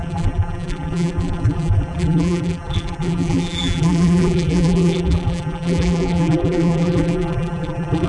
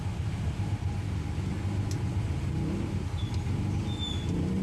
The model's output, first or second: first